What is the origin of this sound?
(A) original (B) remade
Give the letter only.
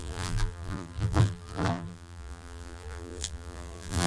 B